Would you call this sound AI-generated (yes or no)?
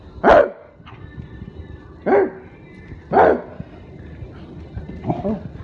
no